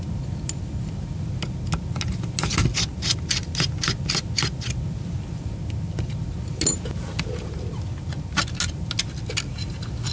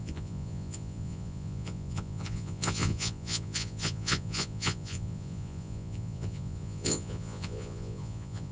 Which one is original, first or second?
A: first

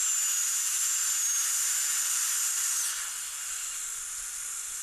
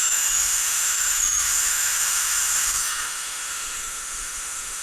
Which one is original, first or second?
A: first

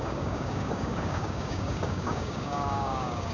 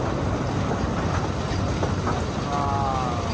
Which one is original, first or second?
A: second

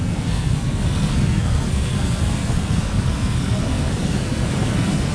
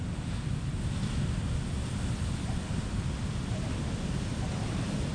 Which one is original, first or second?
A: second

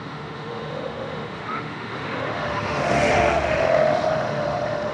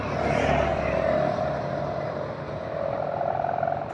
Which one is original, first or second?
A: second